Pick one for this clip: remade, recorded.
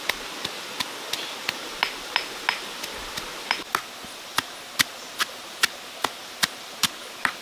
recorded